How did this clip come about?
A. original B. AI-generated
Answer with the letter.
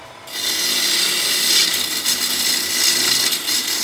A